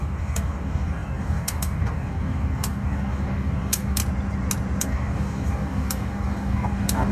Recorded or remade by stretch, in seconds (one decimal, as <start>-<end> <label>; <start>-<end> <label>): 0.0-4.0 remade; 4.0-4.8 recorded; 4.8-7.1 remade